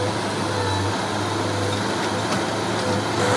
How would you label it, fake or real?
real